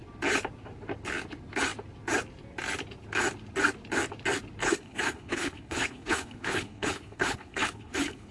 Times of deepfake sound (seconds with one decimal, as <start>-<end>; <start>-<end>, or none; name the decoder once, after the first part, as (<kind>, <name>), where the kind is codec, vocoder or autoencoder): 4.6-8.3 (codec, HILCodec)